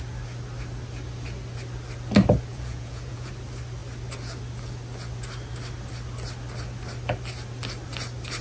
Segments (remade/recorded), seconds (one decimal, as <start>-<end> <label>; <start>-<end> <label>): 0.0-2.5 recorded; 2.5-3.3 remade; 3.3-8.4 recorded